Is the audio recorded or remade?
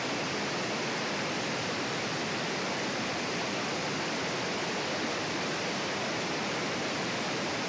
remade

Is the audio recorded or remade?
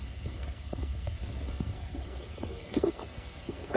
remade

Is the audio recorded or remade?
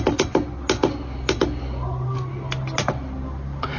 recorded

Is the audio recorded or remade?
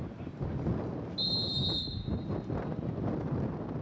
recorded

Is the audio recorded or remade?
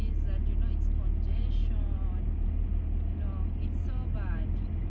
recorded